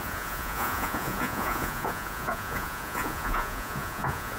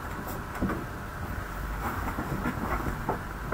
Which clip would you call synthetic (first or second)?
first